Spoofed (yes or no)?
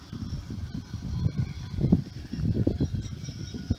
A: yes